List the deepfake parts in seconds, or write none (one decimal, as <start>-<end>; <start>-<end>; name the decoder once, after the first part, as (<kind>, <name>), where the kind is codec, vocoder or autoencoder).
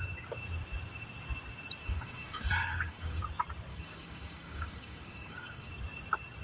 1.8-3.2 (codec, DAC); 3.7-5.7